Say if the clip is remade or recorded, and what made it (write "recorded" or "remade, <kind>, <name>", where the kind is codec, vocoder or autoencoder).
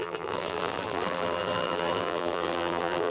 remade, vocoder, BigVGAN v2